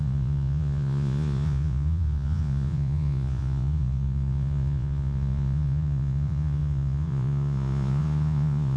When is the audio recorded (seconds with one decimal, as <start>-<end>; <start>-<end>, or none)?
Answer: none